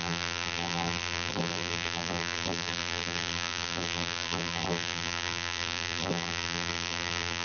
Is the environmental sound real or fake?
fake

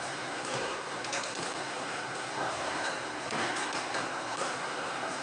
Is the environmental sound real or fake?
fake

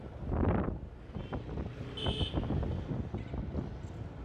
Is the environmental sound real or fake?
real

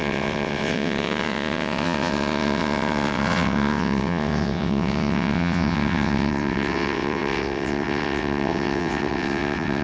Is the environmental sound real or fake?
fake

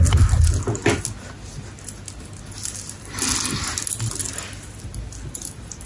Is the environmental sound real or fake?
real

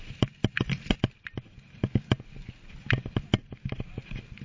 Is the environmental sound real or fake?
real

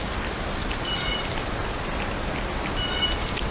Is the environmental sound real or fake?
real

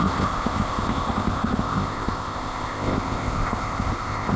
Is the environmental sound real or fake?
fake